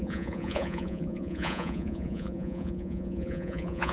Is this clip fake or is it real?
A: fake